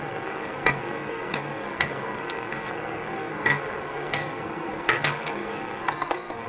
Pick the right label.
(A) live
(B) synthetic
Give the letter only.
B